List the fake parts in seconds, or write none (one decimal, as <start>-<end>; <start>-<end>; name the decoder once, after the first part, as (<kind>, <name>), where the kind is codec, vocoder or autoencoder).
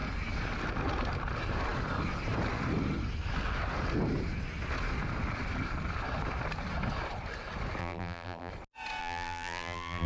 7.8-8.5 (vocoder, BigVGAN v2); 9.0-10.1